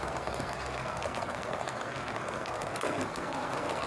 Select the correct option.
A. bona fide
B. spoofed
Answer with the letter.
B